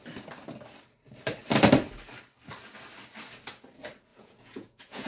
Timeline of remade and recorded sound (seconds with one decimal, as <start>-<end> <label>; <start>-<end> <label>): 0.0-4.1 recorded; 4.1-5.1 remade